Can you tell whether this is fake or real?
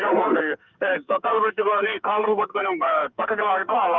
fake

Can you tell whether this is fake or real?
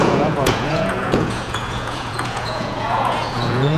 fake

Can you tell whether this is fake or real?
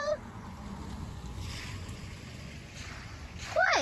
fake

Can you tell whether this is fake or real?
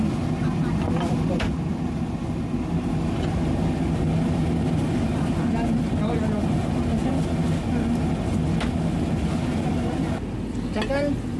real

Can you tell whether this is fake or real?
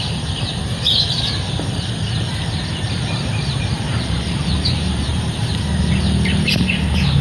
fake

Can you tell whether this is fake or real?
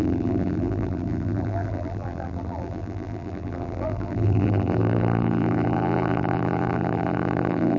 fake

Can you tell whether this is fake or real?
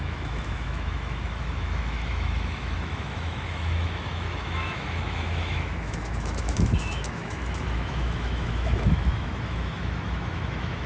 fake